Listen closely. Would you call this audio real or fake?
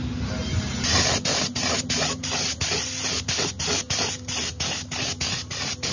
real